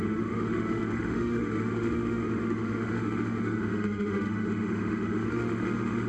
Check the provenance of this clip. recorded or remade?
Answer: remade